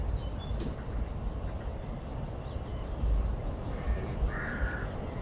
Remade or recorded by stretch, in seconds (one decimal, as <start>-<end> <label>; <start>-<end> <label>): 0.0-2.2 recorded; 2.2-2.7 remade; 2.7-3.4 recorded; 3.4-5.2 remade

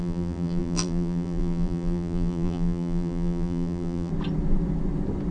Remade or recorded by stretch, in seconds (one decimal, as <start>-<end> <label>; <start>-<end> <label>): 0.0-4.1 remade; 4.1-5.3 recorded

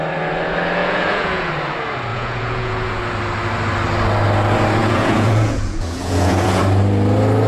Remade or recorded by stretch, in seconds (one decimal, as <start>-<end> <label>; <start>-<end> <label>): 0.0-0.8 recorded; 0.8-1.5 remade; 1.5-2.1 recorded; 2.1-3.0 remade; 3.0-4.8 recorded; 4.8-6.6 remade; 6.6-7.5 recorded